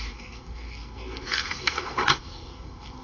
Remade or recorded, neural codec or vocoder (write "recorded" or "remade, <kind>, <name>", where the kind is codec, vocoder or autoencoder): remade, codec, SNAC